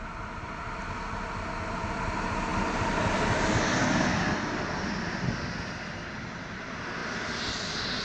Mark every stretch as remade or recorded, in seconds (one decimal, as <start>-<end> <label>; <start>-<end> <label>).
0.0-8.0 recorded